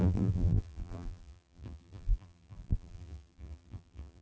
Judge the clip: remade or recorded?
remade